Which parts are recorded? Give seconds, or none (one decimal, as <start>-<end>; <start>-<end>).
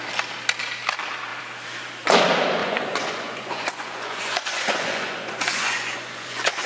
0.0-2.6